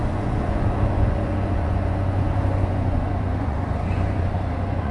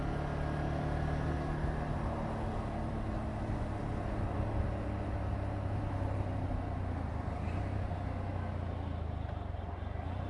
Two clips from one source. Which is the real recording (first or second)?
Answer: second